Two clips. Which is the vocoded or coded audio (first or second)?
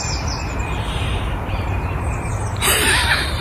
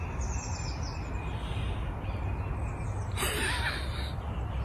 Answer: first